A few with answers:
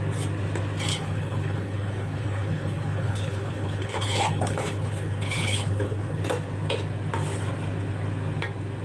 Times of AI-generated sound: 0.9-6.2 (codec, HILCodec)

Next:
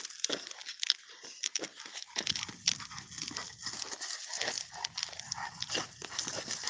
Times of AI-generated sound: none

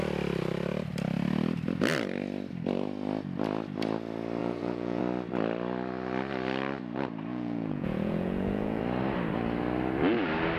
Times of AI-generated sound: 4.4-5.0 (vocoder, Vocos); 7.3-8.8

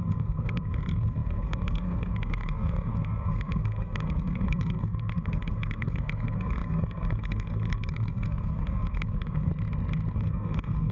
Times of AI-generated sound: 0.0-9.5 (codec, SNAC); 10.1-10.9

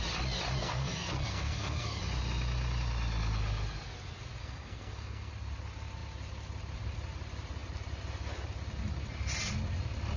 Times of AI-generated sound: 0.6-2.0 (codec, SNAC); 4.4-5.3

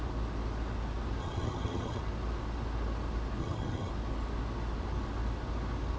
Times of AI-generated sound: 1.2-2.0 (vocoder, HiFi-GAN); 3.4-3.9

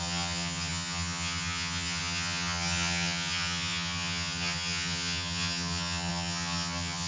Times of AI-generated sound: 0.0-7.1 (vocoder, HiFi-GAN)

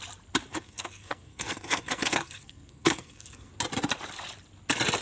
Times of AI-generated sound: 0.5-3.5 (codec, SNAC)